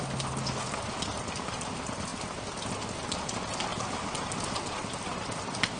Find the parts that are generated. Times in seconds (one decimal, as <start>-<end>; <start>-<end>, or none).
none